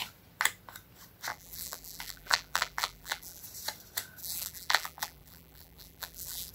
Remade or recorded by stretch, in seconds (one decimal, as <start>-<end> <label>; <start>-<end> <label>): 0.0-1.3 recorded; 1.3-3.4 remade; 3.4-4.2 recorded; 4.2-6.5 remade